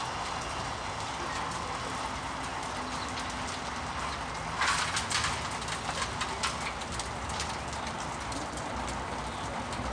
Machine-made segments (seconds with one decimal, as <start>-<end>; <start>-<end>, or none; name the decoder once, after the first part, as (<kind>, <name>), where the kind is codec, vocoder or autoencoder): none